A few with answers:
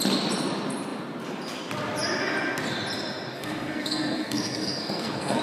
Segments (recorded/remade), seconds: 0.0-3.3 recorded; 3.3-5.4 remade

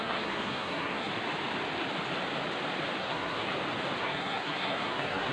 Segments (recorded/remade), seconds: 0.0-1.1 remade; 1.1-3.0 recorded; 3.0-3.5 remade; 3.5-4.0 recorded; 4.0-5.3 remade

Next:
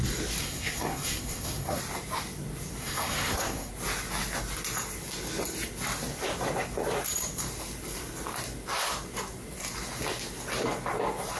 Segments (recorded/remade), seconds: 0.0-0.4 recorded; 0.4-1.8 remade; 1.8-2.8 recorded; 2.8-3.7 remade; 3.7-11.4 recorded